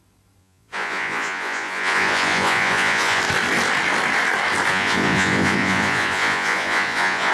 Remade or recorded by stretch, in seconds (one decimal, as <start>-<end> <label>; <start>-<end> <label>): 0.0-0.4 recorded; 0.4-3.2 remade; 3.2-4.7 recorded; 4.7-7.3 remade